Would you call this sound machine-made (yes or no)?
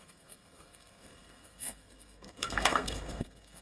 yes